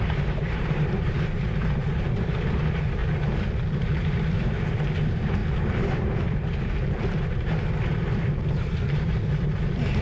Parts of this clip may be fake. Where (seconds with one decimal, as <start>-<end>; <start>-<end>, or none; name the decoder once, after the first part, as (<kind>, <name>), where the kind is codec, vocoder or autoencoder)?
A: 0.0-3.0 (vocoder, BigVGAN v2); 3.6-5.4; 5.9-10.0

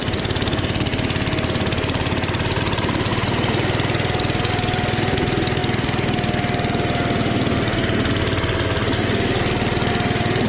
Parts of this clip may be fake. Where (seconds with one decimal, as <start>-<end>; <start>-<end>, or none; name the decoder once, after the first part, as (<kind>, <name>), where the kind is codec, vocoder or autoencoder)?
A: 0.0-0.9 (vocoder, BigVGAN v2); 2.6-5.6; 9.9-10.5

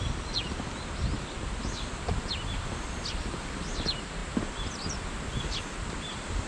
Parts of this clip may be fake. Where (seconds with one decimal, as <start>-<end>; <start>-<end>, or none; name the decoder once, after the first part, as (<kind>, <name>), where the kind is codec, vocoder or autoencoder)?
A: 0.0-4.2 (vocoder, BigVGAN v2); 5.9-6.5

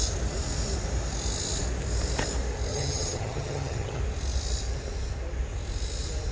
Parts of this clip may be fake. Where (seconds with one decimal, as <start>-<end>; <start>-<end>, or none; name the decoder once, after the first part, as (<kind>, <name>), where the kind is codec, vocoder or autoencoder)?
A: 2.7-4.0 (vocoder, HiFi-GAN)

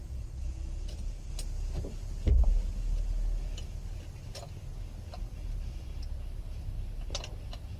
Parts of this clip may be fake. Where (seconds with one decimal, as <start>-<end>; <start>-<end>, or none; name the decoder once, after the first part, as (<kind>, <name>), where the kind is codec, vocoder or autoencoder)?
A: 0.0-1.3 (vocoder, Vocos)

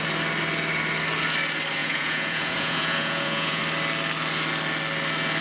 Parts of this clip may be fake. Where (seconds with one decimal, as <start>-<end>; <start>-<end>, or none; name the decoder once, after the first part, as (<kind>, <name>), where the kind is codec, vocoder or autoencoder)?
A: 1.8-3.6 (vocoder, Vocos)